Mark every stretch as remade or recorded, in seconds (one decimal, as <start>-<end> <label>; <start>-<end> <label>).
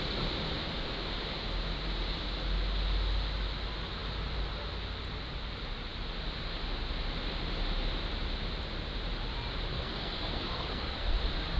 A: 0.0-9.7 recorded; 9.7-11.2 remade; 11.2-11.6 recorded